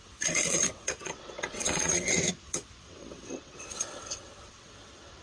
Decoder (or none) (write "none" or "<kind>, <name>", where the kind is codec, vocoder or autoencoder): vocoder, WaveNeXt